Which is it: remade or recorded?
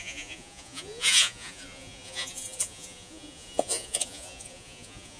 remade